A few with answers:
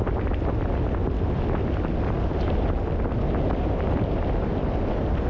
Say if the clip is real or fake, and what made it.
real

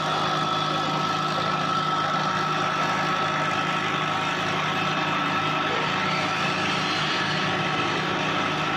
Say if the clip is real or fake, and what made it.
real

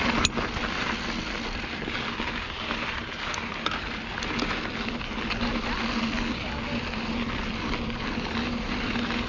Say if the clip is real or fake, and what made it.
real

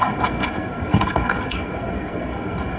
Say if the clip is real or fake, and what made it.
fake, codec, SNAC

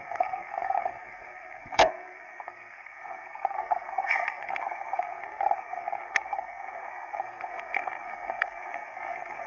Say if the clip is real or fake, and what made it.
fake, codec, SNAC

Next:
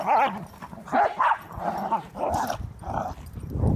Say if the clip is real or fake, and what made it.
real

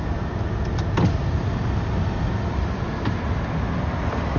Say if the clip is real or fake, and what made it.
real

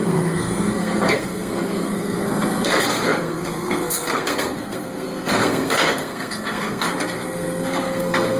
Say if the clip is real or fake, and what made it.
fake, codec, SNAC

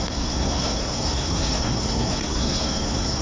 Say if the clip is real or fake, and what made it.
fake, codec, SNAC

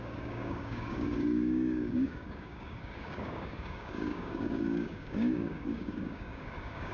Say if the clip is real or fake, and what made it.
fake, codec, DAC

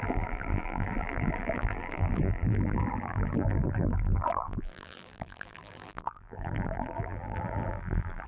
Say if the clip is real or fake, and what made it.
fake, vocoder, BigVGAN v2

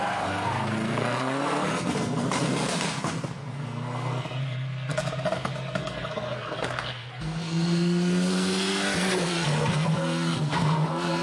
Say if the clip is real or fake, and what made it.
fake, codec, SNAC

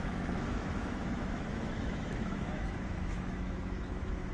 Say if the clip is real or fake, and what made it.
fake, autoencoder, DAC-VAE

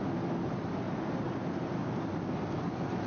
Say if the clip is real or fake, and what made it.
real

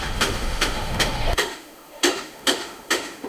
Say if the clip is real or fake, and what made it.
fake, autoencoder, DAC-VAE